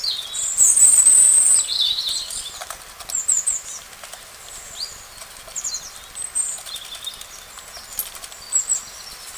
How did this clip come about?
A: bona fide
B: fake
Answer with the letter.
A